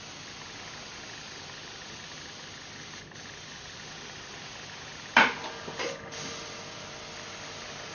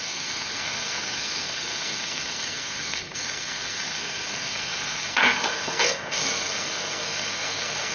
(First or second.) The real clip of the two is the first